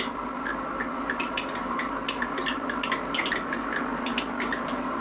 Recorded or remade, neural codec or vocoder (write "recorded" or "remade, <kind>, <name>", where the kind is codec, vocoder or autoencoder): recorded